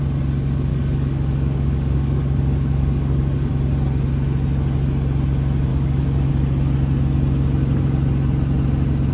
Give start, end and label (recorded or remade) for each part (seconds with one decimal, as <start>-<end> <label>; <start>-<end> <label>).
0.0-0.7 recorded; 0.7-3.5 remade; 3.5-5.7 recorded; 5.7-6.3 remade; 6.3-9.1 recorded